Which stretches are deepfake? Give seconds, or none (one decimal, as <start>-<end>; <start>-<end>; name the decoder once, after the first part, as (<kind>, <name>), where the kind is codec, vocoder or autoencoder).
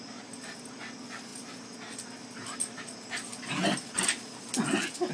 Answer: none